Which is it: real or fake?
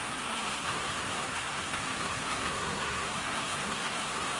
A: fake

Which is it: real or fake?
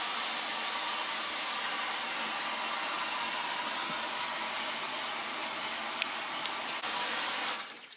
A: real